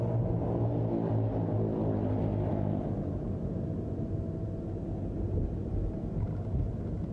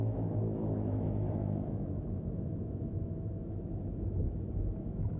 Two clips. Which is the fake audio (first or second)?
second